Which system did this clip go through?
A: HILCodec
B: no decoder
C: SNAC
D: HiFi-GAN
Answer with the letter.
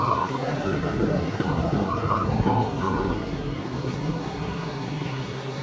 C